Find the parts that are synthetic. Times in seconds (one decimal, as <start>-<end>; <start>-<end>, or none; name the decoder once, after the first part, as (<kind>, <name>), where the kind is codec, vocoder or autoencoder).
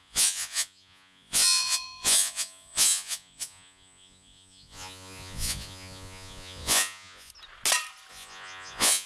0.0-7.3 (vocoder, Vocos); 8.1-9.1